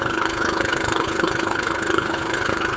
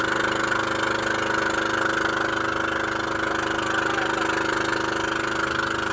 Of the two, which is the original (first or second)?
second